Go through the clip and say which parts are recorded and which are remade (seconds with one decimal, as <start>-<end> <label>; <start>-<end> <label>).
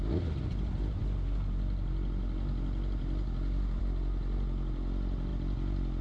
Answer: 0.0-6.0 recorded